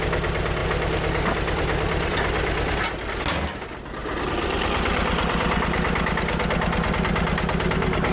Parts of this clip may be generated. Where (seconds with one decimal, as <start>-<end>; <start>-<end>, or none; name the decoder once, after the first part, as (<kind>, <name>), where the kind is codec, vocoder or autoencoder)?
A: 0.6-3.2 (vocoder, BigVGAN v2); 4.0-6.9